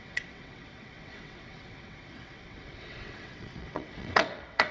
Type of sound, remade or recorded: remade